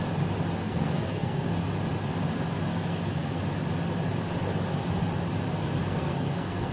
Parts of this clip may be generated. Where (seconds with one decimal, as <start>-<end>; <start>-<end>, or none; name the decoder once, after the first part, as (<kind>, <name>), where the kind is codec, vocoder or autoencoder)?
0.6-1.5 (codec, SNAC); 2.7-3.4; 5.8-6.7